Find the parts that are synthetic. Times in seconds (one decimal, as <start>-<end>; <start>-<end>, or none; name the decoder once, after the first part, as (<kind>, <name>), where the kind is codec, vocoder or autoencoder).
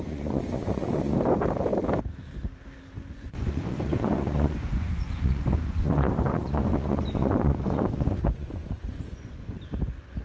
0.0-1.1 (vocoder, Vocos); 3.1-9.4